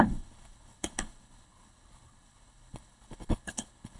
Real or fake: fake